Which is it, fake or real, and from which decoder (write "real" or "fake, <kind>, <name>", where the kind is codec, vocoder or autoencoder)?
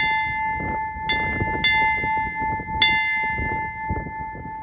real